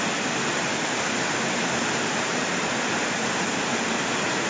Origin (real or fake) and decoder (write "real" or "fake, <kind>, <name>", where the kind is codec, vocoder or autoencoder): fake, vocoder, BigVGAN v2